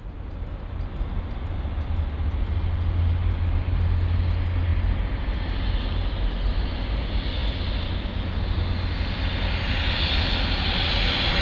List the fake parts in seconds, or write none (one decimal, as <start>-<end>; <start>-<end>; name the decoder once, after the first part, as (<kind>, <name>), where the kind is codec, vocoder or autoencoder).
none